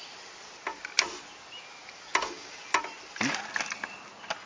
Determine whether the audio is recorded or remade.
recorded